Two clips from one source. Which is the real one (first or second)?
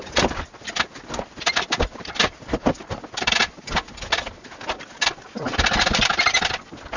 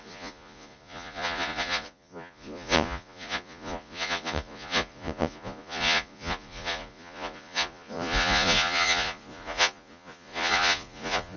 first